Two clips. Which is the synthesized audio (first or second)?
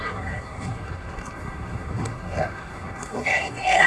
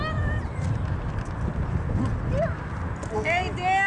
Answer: first